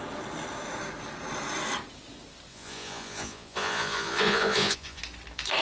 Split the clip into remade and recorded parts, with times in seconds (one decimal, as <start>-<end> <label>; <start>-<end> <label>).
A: 0.0-2.5 recorded; 2.5-5.0 remade; 5.0-5.6 recorded